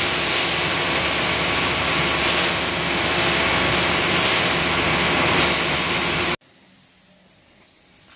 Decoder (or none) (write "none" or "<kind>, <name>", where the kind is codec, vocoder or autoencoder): none